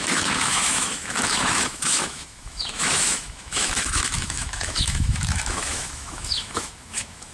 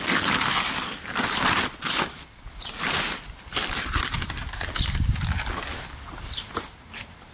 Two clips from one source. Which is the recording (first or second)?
second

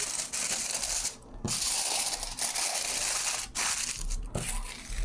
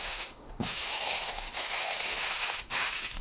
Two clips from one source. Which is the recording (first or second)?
first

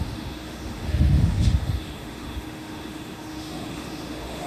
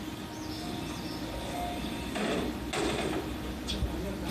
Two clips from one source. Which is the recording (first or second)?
second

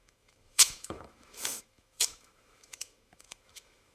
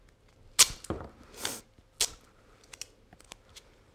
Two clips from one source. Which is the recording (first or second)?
second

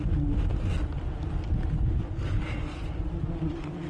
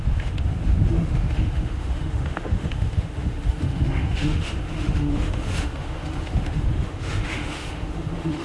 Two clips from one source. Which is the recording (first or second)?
first